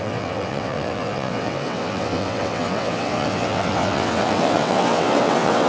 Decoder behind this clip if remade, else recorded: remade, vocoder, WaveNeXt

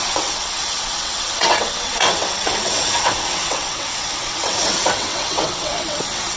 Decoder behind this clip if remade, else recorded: remade, vocoder, WaveNeXt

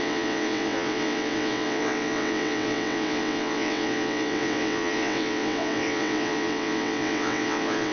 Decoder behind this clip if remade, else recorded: remade, vocoder, WaveNeXt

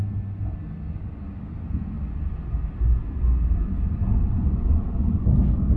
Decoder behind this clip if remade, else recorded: recorded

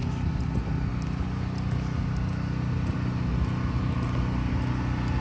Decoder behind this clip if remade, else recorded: recorded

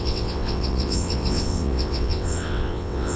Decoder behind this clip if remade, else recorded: remade, vocoder, WaveNeXt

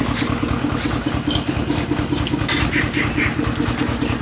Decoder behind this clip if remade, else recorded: recorded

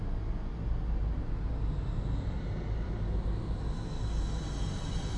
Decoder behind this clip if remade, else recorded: recorded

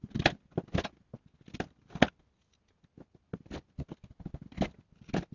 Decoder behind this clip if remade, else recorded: recorded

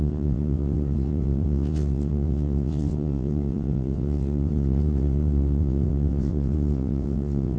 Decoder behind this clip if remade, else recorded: remade, vocoder, WaveNeXt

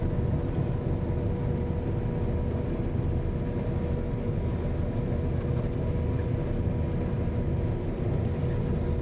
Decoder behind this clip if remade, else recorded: recorded